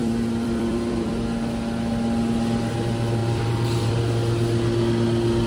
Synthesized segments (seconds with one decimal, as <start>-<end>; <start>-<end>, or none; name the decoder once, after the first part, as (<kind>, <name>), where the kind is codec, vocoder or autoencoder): 0.0-1.1 (vocoder, BigVGAN v2); 3.2-3.9